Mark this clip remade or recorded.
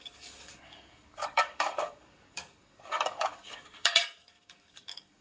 remade